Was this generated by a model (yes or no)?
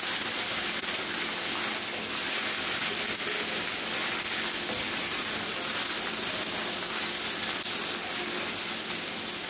no